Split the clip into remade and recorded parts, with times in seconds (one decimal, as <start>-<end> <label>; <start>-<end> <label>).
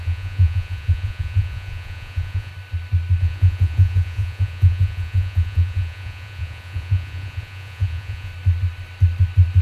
0.0-2.5 remade; 2.5-3.2 recorded; 3.2-8.3 remade; 8.3-9.6 recorded